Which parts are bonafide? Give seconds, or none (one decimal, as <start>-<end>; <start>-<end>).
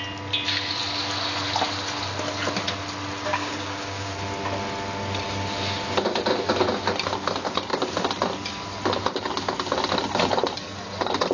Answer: 0.0-3.3; 4.1-11.3